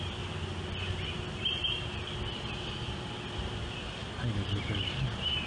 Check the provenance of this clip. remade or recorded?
recorded